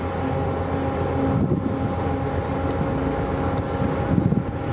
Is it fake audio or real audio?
real